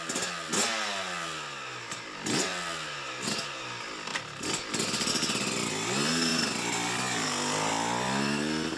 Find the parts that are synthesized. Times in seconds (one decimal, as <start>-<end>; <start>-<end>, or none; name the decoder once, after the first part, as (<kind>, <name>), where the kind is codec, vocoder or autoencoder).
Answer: none